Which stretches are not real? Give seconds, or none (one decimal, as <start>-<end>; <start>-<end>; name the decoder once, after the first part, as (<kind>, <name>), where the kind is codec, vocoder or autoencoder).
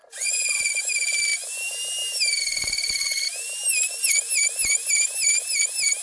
0.0-0.7 (vocoder, Vocos)